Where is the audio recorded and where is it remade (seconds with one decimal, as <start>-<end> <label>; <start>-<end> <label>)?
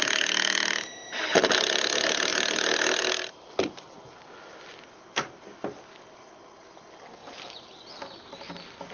0.0-2.3 recorded; 2.3-3.0 remade; 3.0-7.2 recorded; 7.2-8.5 remade; 8.5-8.9 recorded